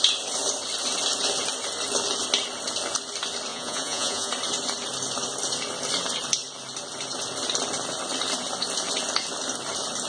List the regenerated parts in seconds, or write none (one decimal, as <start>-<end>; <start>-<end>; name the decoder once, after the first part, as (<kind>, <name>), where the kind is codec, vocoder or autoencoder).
3.5-4.3 (vocoder, Vocos)

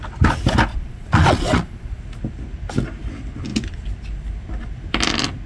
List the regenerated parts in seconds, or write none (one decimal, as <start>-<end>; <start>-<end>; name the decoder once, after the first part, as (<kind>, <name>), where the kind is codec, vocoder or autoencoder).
0.7-2.0 (vocoder, Vocos)

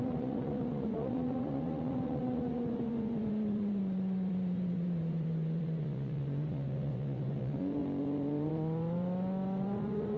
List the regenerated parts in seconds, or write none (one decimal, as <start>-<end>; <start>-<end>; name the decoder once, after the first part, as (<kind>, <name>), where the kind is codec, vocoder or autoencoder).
0.0-10.2 (vocoder, Vocos)

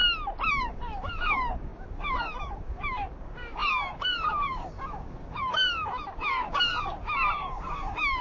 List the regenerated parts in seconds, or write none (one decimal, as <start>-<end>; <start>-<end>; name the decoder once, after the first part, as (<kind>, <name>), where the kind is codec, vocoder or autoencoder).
0.5-8.2 (codec, DAC)

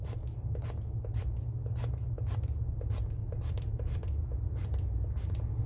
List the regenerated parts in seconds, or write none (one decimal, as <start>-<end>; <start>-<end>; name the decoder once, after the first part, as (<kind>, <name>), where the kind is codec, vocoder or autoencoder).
3.2-4.4 (vocoder, BigVGAN v2)

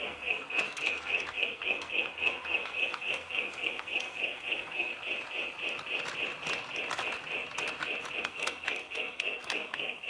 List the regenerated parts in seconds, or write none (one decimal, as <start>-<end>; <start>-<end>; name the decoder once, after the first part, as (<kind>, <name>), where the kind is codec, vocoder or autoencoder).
0.0-4.9 (codec, SNAC); 8.2-10.1